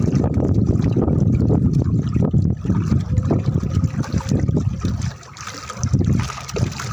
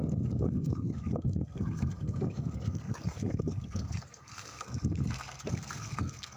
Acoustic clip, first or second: first